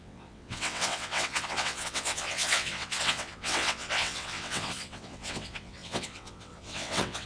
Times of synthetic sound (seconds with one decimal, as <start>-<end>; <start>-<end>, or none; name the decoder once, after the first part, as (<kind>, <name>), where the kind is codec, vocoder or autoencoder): 0.0-7.3 (vocoder, WaveNeXt)